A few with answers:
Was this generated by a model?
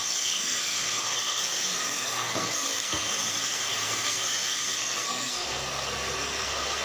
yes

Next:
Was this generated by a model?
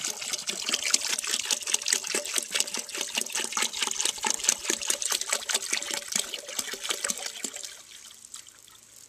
no